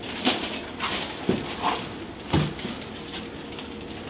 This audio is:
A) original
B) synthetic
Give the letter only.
A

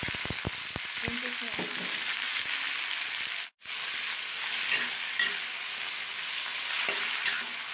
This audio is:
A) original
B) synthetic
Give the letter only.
A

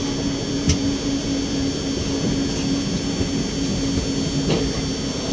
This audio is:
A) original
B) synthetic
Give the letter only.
A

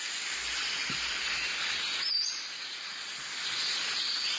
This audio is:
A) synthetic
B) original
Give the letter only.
B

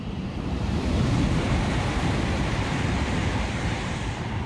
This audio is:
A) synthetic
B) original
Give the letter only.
A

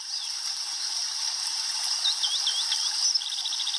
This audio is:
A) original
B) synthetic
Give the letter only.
B